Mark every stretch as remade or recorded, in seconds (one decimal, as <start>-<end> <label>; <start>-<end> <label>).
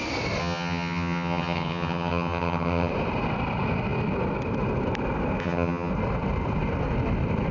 0.0-0.4 recorded; 0.4-2.9 remade; 2.9-5.4 recorded; 5.4-5.9 remade; 5.9-7.5 recorded